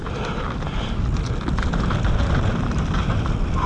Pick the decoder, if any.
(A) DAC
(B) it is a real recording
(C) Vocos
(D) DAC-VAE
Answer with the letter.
B